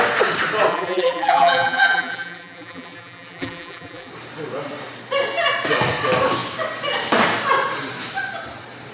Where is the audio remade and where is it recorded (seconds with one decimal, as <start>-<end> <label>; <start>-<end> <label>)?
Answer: 0.0-0.7 recorded; 0.7-4.1 remade; 4.1-8.9 recorded